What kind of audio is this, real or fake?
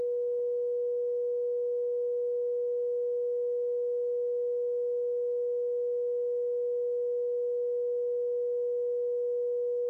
real